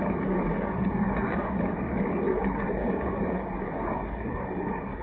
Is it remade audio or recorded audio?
remade